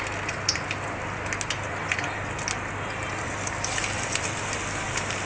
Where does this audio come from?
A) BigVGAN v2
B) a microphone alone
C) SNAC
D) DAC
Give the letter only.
B